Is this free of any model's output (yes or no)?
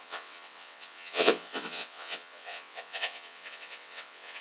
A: no